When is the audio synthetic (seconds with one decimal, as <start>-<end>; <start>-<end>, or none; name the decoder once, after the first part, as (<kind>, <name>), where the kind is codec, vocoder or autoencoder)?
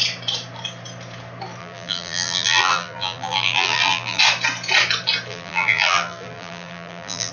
1.6-4.2 (vocoder, BigVGAN v2); 5.3-7.3